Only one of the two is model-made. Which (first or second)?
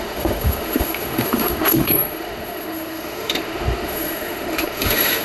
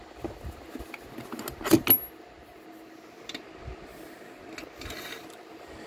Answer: first